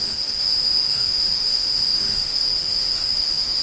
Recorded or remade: remade